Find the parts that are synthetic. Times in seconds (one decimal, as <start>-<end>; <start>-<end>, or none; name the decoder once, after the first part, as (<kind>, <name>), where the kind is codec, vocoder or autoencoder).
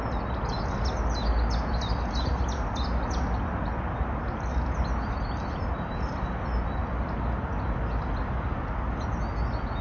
none